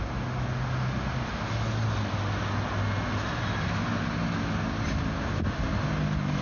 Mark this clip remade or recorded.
recorded